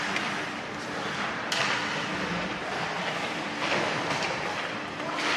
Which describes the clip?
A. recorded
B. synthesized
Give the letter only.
B